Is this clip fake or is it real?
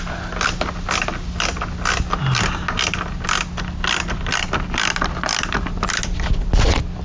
real